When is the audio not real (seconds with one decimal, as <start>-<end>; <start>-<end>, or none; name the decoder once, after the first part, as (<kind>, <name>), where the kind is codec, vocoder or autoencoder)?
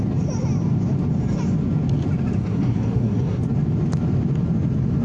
2.4-3.4 (codec, SNAC)